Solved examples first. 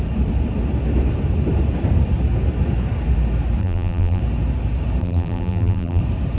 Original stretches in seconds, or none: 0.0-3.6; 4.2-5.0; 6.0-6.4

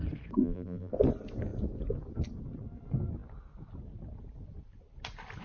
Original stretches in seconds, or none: 0.0-0.4; 0.9-5.4

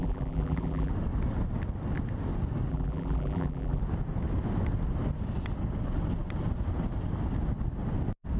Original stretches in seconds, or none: 0.9-2.7; 3.8-8.4

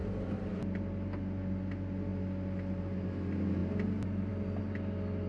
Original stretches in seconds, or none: 0.0-5.3

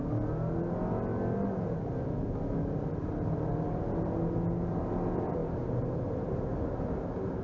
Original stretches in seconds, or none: 0.0-7.4

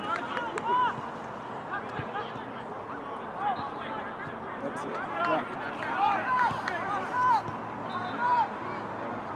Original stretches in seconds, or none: 0.0-4.9; 5.8-9.4

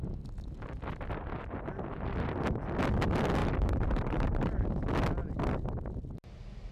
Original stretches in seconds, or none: 0.0-3.4; 4.7-6.7

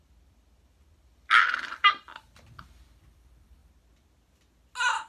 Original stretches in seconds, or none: 1.8-2.6; 3.6-5.1